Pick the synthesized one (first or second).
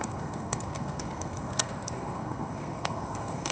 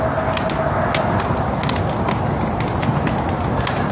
first